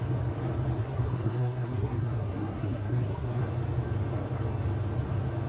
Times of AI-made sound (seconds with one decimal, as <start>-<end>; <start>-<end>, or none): 0.8-3.4